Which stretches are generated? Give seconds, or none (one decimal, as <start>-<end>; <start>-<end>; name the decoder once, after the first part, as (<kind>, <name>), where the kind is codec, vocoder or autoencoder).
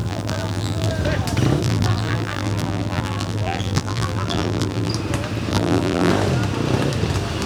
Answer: 0.0-0.9 (vocoder, BigVGAN v2); 1.6-4.9; 5.5-6.1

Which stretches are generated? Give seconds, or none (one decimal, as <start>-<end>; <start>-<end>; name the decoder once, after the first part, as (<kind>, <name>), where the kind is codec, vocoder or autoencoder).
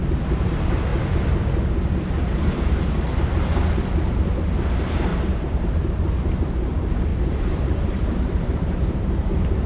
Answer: 5.1-6.4 (vocoder, BigVGAN v2); 7.1-9.7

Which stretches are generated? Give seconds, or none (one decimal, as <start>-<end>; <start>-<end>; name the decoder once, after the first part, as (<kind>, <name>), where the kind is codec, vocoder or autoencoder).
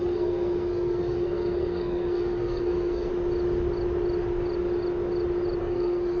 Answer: 0.0-3.1 (codec, SNAC); 5.6-6.2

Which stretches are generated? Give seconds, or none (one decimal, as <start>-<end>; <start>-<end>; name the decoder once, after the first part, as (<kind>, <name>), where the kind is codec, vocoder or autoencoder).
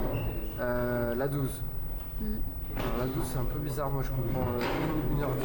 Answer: none